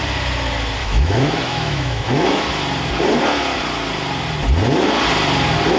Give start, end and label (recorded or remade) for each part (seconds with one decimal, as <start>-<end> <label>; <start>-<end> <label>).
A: 0.0-0.8 recorded; 0.8-2.4 remade; 2.4-5.8 recorded